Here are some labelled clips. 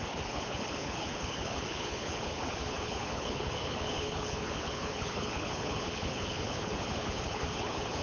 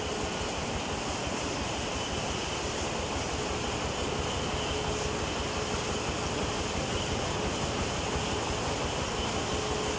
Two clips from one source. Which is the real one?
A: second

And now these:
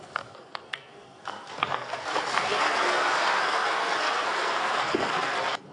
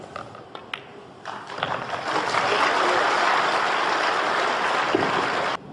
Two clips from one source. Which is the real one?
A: second